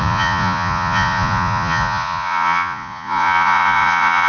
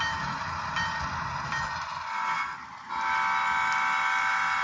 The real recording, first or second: second